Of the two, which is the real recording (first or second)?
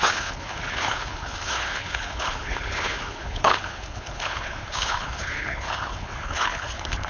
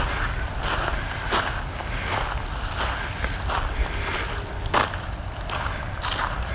second